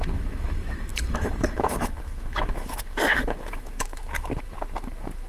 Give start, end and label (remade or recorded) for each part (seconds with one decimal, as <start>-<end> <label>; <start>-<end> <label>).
0.0-5.3 remade